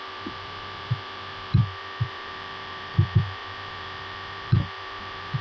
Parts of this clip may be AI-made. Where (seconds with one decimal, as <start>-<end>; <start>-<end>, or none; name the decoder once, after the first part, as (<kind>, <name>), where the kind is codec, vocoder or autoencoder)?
0.0-1.6 (vocoder, BigVGAN v2); 2.1-5.4